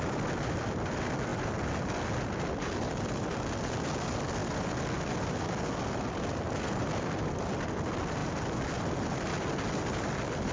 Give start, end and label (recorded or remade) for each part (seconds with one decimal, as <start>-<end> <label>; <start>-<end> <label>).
0.0-10.5 recorded